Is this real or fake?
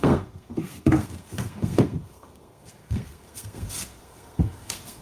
fake